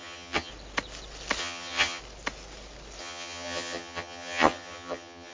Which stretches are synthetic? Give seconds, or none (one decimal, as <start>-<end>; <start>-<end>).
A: 0.0-0.5; 1.4-2.0; 3.0-5.3